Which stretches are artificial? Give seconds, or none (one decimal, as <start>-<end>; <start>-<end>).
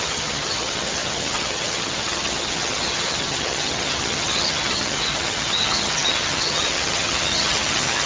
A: 0.0-8.1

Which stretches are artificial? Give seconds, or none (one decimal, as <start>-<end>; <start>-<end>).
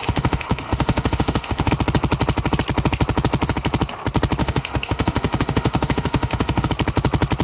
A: 0.0-1.7; 4.4-6.7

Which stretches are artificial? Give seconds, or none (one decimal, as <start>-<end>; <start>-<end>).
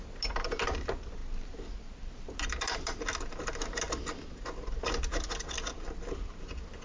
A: none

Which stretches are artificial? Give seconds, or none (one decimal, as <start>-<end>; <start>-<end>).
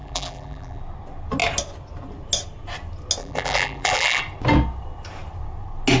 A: 0.0-0.8; 3.2-4.2